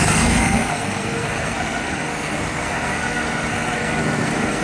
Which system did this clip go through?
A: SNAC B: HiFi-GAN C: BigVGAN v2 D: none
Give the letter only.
A